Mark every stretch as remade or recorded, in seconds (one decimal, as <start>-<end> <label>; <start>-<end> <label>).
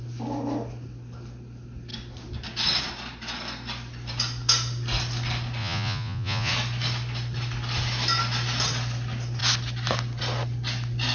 0.0-5.6 recorded; 5.6-6.5 remade; 6.5-11.1 recorded